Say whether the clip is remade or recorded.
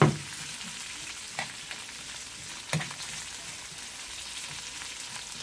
recorded